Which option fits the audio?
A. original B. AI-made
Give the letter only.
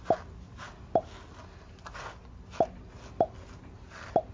A